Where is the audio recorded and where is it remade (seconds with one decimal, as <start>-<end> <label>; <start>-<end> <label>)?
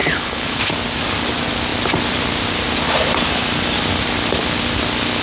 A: 0.0-0.6 remade; 0.6-5.2 recorded